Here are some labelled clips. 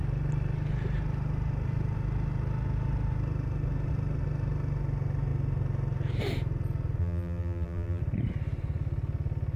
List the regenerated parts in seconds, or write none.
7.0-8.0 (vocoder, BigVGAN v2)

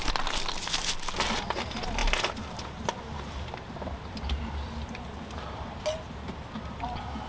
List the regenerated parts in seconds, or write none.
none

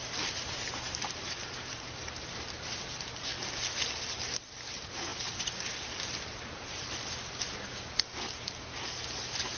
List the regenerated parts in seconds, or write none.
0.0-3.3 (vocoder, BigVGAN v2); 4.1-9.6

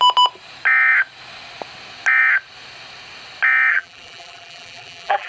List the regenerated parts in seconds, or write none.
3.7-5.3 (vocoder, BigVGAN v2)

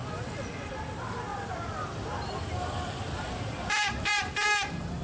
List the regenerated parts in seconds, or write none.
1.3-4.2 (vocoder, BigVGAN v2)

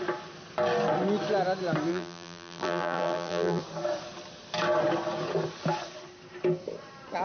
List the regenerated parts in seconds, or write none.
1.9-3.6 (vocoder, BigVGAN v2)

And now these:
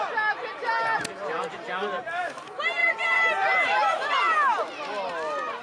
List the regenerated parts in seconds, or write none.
1.2-2.0 (vocoder, BigVGAN v2); 2.8-4.2

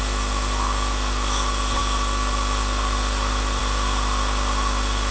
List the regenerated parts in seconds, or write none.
none